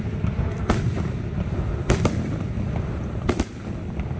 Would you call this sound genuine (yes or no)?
yes